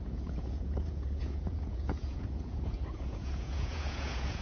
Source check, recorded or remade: remade